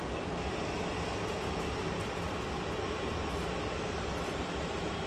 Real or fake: real